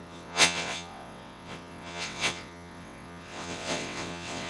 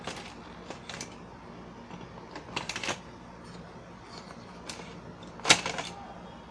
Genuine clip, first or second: second